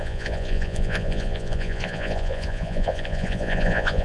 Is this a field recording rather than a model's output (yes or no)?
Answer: no